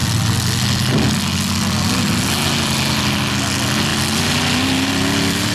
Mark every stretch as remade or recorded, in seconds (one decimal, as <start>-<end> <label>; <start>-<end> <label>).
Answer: 0.0-5.5 recorded